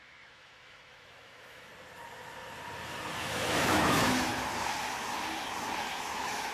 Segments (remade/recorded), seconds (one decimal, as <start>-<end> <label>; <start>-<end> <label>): 0.0-1.7 remade; 1.7-3.2 recorded; 3.2-4.3 remade; 4.3-5.8 recorded; 5.8-6.5 remade